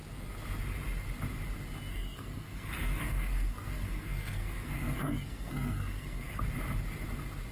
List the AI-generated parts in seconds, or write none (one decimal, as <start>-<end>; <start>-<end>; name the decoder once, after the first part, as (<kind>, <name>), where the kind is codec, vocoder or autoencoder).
1.9-6.4 (codec, SNAC)